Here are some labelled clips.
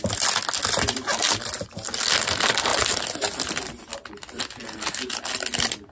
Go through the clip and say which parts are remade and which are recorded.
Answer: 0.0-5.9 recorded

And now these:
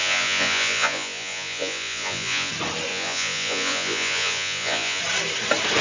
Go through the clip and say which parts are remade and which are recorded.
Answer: 0.0-2.5 remade; 2.5-2.9 recorded; 2.9-5.0 remade; 5.0-5.8 recorded

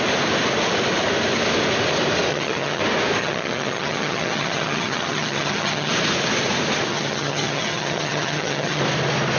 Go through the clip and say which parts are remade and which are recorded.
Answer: 0.0-2.3 recorded; 2.3-2.8 remade; 2.8-3.2 recorded; 3.2-5.9 remade; 5.9-6.9 recorded; 6.9-8.8 remade; 8.8-9.4 recorded

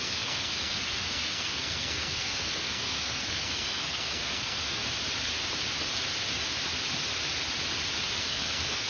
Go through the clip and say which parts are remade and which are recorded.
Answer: 0.0-4.8 remade; 4.8-8.2 recorded; 8.2-8.9 remade

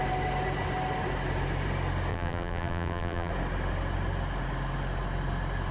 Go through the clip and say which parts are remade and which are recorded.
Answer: 0.0-2.1 recorded; 2.1-3.3 remade; 3.3-5.7 recorded